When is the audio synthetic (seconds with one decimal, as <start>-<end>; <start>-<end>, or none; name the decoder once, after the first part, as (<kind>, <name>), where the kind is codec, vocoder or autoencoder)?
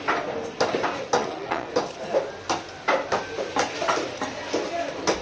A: 1.2-1.7 (vocoder, Vocos)